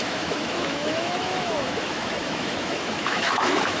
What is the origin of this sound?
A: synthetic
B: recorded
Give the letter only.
A